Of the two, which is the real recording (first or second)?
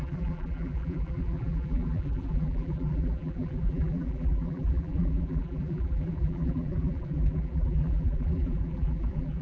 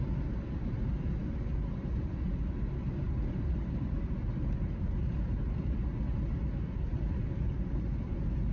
second